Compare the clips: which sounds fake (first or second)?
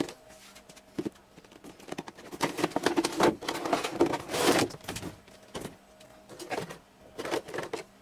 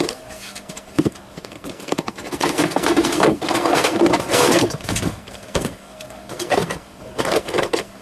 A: second